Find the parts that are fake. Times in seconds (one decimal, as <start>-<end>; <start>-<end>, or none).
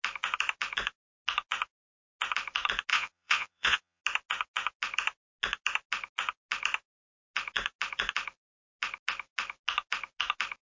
2.9-4.0